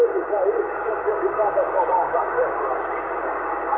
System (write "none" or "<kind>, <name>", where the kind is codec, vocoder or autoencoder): none